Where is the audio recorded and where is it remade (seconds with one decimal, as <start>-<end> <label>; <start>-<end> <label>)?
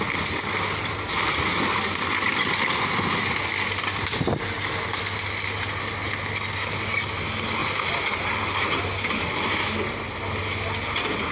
0.0-11.3 recorded